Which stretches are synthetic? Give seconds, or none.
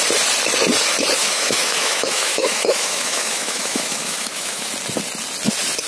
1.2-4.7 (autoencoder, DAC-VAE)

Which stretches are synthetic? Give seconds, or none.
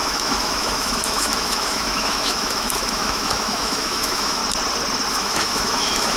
0.0-4.4 (autoencoder, DAC-VAE); 5.1-6.2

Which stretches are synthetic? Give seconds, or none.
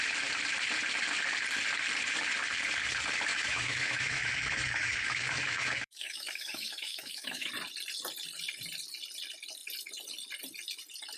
3.3-7.5 (autoencoder, DAC-VAE)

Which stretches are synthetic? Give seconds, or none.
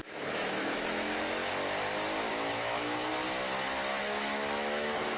0.0-1.4 (autoencoder, DAC-VAE); 2.3-3.1; 4.0-5.2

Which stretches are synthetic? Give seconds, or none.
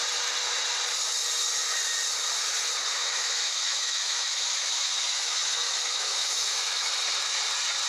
2.9-6.9 (autoencoder, DAC-VAE)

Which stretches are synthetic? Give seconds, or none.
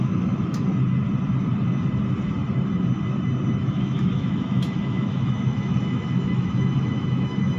0.0-0.7 (autoencoder, DAC-VAE); 3.6-7.6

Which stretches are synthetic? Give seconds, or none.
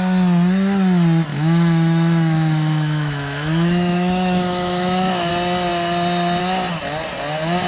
1.3-5.3 (autoencoder, DAC-VAE)